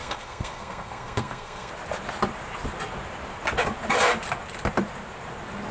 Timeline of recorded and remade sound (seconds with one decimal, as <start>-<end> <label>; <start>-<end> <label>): 0.0-1.7 remade; 1.7-5.7 recorded